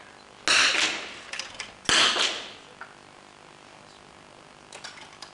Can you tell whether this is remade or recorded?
recorded